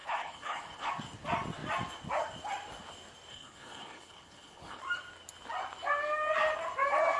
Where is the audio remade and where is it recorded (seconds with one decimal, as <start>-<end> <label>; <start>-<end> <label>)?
0.0-0.9 remade; 0.9-3.3 recorded; 3.3-4.8 remade; 4.8-7.2 recorded